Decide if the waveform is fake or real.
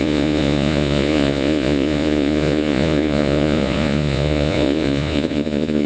fake